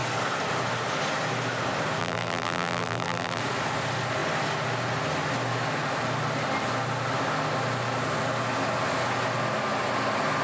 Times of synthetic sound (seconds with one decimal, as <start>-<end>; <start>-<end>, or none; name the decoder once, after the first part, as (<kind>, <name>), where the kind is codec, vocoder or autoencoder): 2.0-3.4 (vocoder, BigVGAN v2)